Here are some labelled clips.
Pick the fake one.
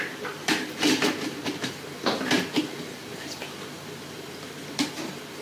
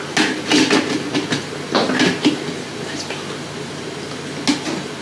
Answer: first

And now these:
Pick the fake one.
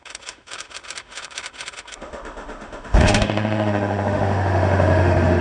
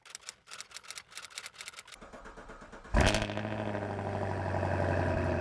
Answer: first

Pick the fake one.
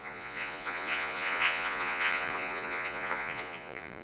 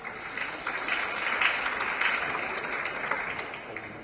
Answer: first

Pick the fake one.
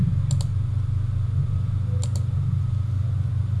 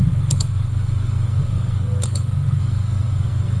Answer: second